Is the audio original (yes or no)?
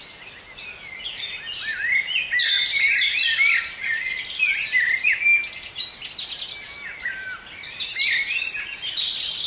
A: yes